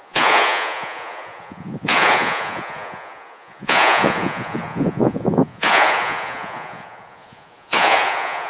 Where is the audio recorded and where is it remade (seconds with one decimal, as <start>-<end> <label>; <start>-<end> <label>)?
0.0-8.5 remade